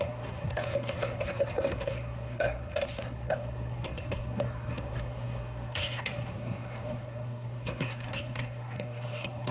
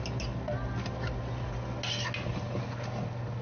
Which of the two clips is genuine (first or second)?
second